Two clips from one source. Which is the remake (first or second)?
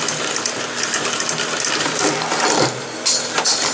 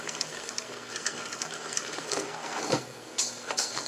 second